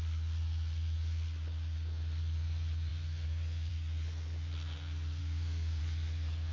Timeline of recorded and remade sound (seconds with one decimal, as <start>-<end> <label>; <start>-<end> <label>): 0.0-5.2 recorded; 5.2-5.8 remade; 5.8-6.5 recorded